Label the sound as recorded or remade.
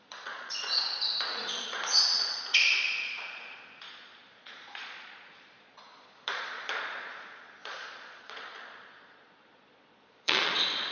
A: remade